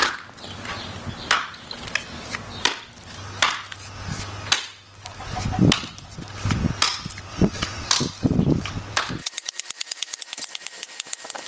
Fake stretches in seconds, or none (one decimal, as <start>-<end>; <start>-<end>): 7.3-7.9; 9.2-10.2